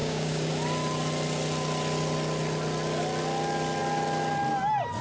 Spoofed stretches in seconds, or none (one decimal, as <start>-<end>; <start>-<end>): 0.0-0.5